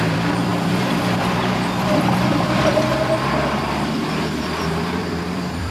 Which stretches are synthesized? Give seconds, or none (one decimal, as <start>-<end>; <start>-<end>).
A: 0.0-5.7